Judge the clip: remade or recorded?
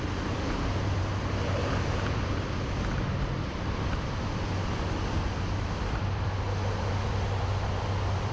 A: recorded